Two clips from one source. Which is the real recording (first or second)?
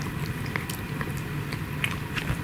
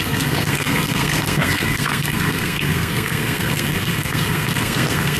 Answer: first